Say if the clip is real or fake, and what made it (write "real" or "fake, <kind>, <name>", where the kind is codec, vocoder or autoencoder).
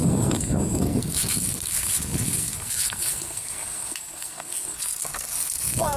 fake, codec, SNAC